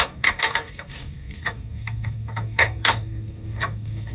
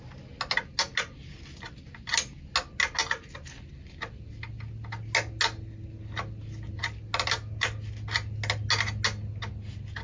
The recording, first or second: second